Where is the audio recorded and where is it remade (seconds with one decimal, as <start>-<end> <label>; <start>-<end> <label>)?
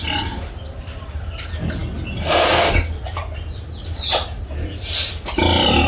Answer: 0.0-5.9 recorded